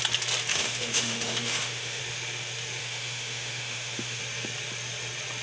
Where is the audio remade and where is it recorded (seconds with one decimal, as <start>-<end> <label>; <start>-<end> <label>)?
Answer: 0.0-0.5 recorded; 0.5-2.0 remade; 2.0-2.8 recorded; 2.8-4.2 remade; 4.2-5.4 recorded